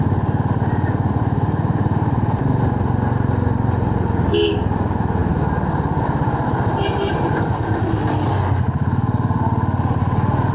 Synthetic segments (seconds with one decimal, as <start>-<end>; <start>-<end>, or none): none